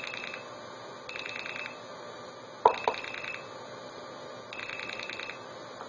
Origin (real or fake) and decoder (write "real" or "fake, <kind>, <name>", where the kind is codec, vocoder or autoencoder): real